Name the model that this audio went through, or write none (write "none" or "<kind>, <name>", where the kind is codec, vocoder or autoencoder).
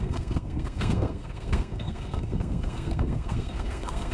codec, SNAC